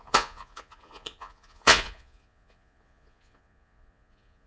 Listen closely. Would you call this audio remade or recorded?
remade